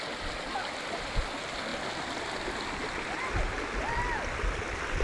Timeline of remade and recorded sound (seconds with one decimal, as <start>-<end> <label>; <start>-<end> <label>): 0.0-5.0 recorded